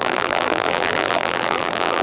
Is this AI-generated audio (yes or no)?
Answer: yes